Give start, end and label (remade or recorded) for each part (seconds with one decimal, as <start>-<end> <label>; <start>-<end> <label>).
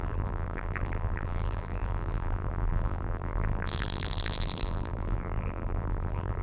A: 0.0-6.4 remade